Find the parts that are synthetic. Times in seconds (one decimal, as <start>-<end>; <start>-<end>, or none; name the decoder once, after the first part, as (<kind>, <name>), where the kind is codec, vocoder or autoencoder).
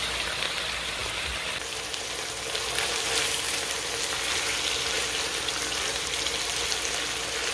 none